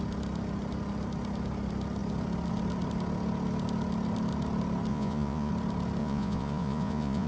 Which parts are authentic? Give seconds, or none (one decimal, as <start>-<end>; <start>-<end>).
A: 0.0-4.9; 5.5-6.0